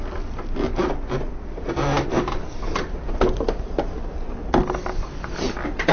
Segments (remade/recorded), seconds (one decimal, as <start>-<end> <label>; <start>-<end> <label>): 0.0-2.1 recorded; 2.1-3.4 remade; 3.4-4.8 recorded; 4.8-5.4 remade; 5.4-5.9 recorded